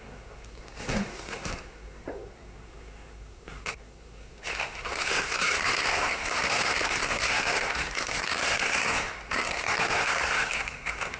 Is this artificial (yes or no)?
yes